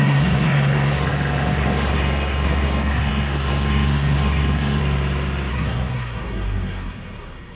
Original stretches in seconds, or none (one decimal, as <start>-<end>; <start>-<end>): 4.8-5.5